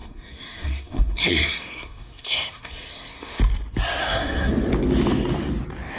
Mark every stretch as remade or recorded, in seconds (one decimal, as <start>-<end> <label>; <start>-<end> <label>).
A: 0.0-3.4 remade; 3.4-4.0 recorded; 4.0-4.5 remade; 4.5-6.0 recorded